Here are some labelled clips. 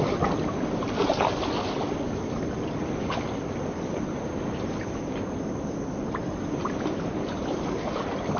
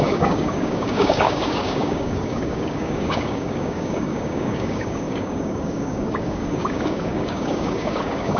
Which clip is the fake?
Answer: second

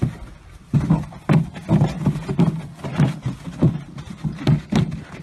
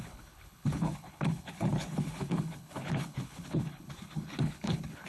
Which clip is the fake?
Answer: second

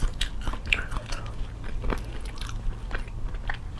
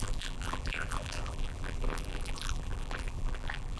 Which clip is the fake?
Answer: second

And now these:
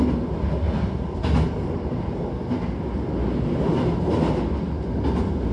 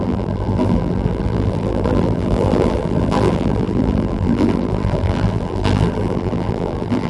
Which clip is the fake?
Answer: second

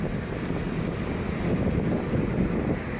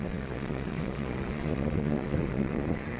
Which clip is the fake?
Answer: second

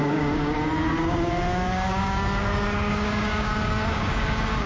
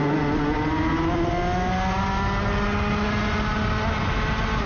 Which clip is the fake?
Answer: first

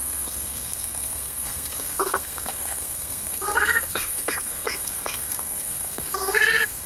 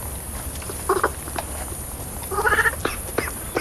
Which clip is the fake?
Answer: first